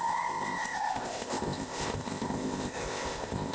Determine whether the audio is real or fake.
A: fake